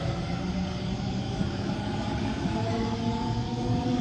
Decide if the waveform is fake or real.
fake